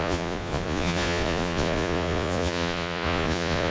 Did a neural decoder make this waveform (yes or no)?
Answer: yes